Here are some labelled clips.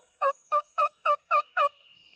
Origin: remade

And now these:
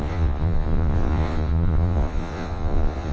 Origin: remade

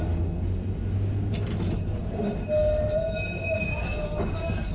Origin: recorded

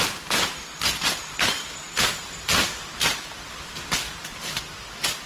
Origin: recorded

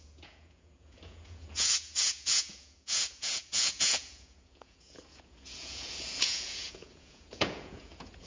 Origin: remade